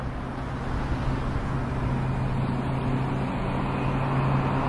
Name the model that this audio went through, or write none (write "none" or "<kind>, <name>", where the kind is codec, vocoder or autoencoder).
none